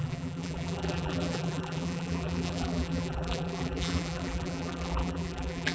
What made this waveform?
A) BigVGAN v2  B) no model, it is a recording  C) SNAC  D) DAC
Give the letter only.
A